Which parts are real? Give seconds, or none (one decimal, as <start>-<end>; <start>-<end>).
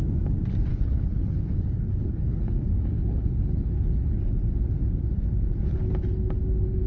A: 0.0-0.7; 4.2-6.9